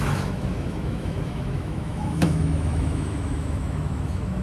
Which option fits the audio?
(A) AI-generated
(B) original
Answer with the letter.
A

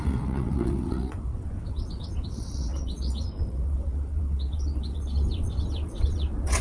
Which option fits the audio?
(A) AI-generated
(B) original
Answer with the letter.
A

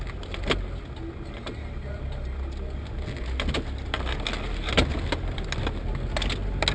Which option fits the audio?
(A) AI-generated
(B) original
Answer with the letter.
B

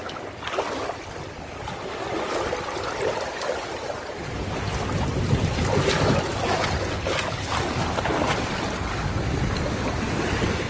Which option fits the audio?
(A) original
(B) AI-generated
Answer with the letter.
A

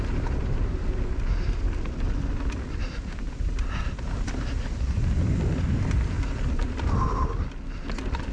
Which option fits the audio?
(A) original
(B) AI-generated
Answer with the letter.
A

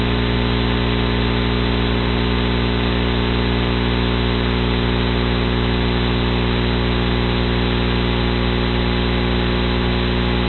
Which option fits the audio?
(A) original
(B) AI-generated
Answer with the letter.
A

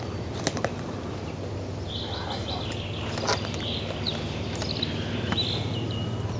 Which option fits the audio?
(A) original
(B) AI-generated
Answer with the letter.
A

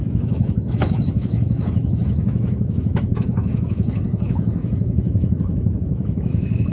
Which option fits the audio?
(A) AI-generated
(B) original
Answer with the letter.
A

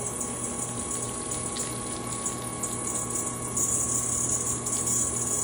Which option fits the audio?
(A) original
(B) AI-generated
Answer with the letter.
A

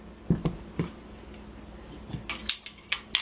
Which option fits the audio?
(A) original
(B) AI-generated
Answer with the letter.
A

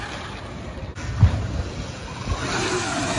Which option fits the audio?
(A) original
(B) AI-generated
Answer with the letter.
A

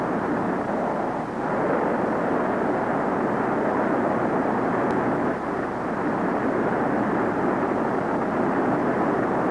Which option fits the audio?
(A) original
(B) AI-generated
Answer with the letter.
A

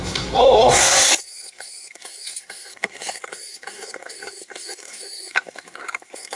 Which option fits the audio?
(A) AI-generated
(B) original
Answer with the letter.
A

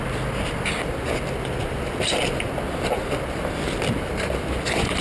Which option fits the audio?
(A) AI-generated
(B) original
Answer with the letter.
B